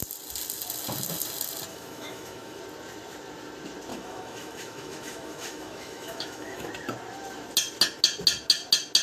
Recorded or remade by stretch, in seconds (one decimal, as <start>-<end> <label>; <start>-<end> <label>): 0.0-1.7 recorded; 1.7-2.6 remade; 2.6-3.9 recorded; 3.9-6.7 remade; 6.7-9.0 recorded